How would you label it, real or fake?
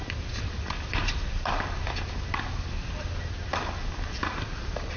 real